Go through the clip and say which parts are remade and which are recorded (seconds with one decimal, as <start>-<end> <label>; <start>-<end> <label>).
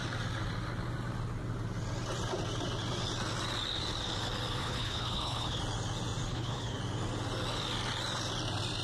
0.0-4.6 recorded; 4.6-5.6 remade; 5.6-6.3 recorded; 6.3-6.8 remade; 6.8-8.8 recorded